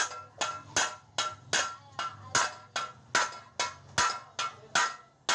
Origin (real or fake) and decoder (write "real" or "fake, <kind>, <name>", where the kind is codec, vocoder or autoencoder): real